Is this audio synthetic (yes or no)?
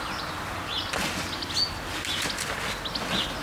no